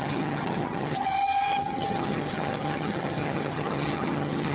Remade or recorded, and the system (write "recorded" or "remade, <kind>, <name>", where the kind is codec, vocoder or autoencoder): remade, vocoder, HiFi-GAN